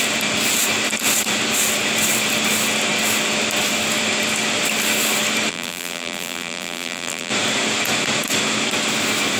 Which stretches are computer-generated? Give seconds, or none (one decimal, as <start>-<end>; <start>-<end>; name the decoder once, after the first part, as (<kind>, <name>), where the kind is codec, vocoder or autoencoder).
5.5-7.3 (vocoder, BigVGAN v2)